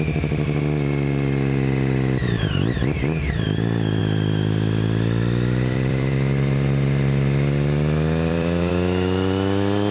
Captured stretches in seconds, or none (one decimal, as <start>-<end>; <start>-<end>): 0.0-4.0; 8.7-9.9